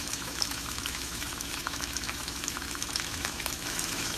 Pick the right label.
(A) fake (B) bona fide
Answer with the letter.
A